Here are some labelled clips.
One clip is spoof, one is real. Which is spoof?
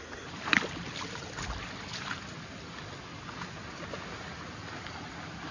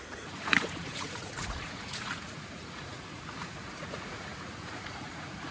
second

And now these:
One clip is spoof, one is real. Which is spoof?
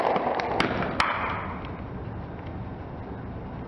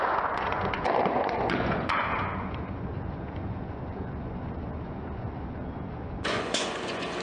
second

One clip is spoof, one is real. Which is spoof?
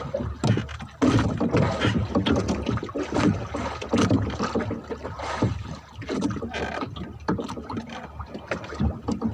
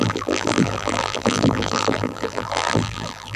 second